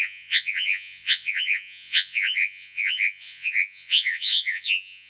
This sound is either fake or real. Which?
fake